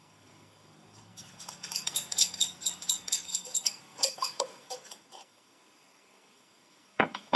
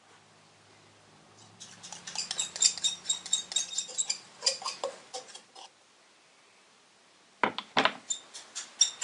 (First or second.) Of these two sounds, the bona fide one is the second